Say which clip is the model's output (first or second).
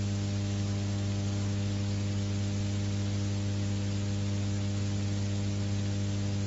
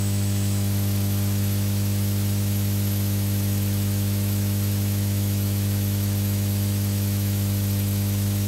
second